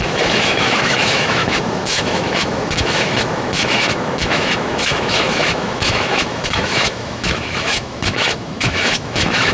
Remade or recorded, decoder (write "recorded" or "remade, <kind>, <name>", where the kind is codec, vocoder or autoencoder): remade, autoencoder, DAC-VAE